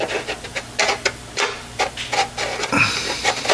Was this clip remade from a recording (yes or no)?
no